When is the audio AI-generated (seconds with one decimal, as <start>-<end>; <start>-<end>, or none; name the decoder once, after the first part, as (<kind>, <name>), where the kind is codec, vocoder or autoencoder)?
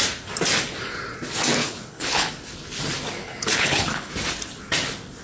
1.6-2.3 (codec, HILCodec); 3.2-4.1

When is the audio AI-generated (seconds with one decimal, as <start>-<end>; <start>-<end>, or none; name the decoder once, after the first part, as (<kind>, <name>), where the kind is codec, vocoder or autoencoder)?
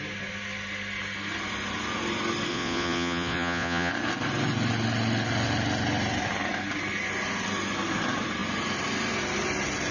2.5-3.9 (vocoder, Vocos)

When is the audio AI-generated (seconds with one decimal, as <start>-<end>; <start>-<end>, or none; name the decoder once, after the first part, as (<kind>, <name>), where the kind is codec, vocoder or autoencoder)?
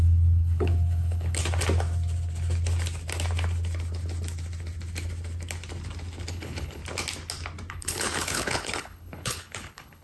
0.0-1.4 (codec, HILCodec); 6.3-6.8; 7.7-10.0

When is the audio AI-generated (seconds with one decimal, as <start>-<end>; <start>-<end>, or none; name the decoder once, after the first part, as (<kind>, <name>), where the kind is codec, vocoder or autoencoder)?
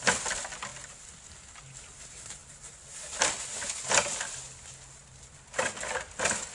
none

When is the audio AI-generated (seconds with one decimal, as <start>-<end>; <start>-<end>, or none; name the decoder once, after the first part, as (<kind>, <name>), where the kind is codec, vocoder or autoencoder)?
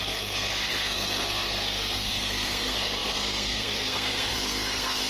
0.0-5.1 (codec, SNAC)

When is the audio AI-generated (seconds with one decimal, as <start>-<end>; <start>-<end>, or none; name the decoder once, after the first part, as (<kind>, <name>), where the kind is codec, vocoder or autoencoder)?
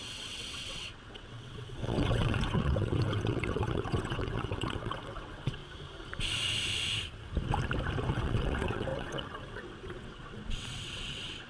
0.0-5.6 (vocoder, WaveNeXt); 8.1-11.5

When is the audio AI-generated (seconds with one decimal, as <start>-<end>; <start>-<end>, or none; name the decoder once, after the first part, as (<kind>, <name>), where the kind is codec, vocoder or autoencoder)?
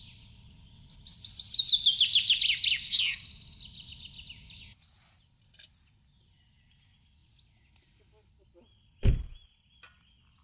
none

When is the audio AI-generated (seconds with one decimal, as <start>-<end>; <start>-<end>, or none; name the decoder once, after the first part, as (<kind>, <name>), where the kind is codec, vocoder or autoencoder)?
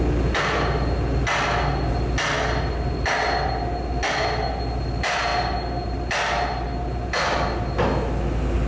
none